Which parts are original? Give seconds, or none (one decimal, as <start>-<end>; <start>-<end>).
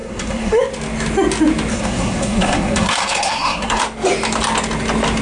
0.6-1.7; 3.8-5.2